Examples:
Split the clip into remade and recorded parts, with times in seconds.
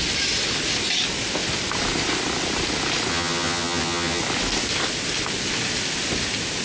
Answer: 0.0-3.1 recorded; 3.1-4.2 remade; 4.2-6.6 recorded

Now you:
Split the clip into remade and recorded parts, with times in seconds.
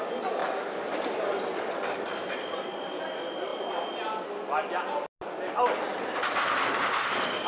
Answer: 0.0-7.5 recorded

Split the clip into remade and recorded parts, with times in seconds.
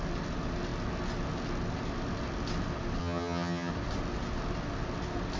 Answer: 0.0-3.0 recorded; 3.0-3.7 remade; 3.7-5.4 recorded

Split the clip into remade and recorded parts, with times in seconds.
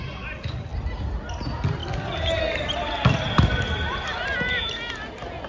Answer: 0.0-5.5 recorded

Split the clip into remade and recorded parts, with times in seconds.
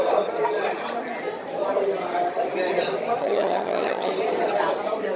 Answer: 0.0-3.2 recorded; 3.2-4.1 remade; 4.1-5.2 recorded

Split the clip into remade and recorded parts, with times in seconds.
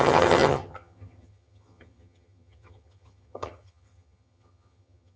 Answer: 0.0-5.2 remade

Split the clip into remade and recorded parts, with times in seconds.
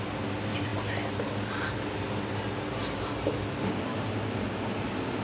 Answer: 0.0-5.2 recorded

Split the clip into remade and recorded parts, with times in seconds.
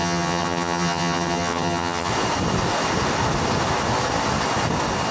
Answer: 0.0-2.1 remade; 2.1-5.1 recorded